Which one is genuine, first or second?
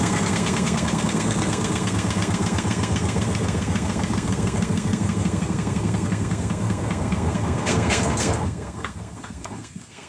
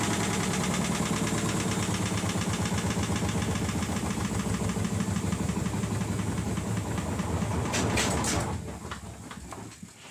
second